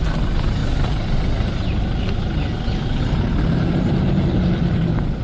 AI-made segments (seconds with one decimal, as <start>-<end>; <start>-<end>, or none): none